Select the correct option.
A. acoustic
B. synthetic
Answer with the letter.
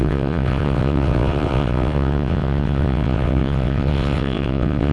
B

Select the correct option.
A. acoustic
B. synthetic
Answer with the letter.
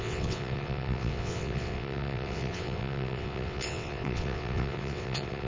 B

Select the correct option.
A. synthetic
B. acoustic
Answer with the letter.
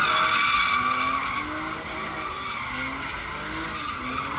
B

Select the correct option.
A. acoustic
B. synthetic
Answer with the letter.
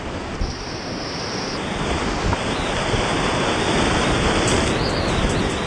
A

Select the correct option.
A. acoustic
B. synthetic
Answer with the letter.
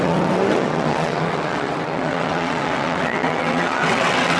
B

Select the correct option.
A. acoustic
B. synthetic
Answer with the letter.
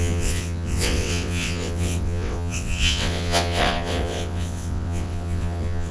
B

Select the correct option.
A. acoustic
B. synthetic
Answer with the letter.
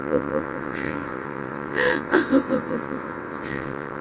B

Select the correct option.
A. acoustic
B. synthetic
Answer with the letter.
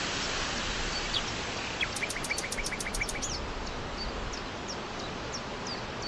A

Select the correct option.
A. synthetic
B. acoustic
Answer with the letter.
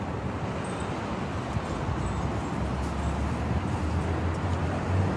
B